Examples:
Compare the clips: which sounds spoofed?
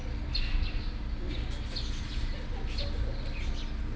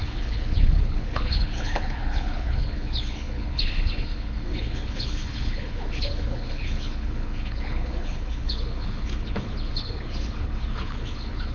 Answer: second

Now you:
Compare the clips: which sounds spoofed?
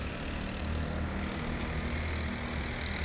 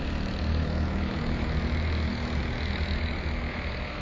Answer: second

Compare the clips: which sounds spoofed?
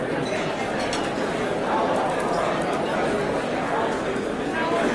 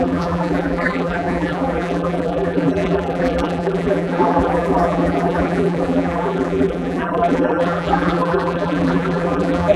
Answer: second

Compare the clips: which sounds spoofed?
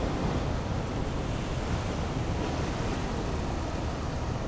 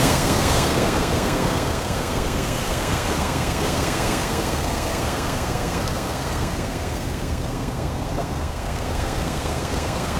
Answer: second